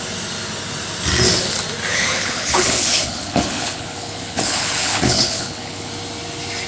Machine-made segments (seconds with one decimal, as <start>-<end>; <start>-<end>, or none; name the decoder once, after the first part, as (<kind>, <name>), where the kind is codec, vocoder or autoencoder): 1.9-5.9 (codec, HILCodec)